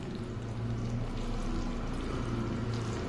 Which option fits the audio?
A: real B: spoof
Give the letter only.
A